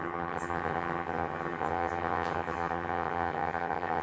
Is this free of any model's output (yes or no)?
no